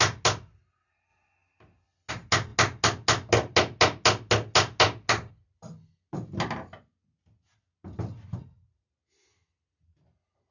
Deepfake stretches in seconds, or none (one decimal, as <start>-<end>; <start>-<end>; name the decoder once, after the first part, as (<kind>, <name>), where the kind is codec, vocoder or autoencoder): none